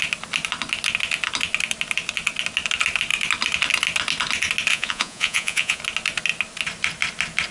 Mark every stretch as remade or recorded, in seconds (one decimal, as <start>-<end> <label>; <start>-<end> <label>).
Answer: 0.0-4.7 recorded; 4.7-5.8 remade; 5.8-7.5 recorded